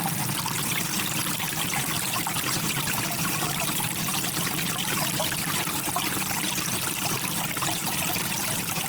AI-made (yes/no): yes